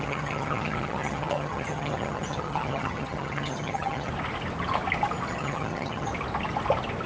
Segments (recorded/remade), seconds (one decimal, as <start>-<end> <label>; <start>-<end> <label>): 0.0-4.1 remade; 4.1-5.3 recorded; 5.3-6.1 remade; 6.1-7.1 recorded